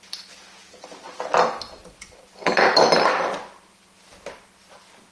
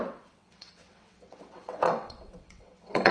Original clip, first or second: first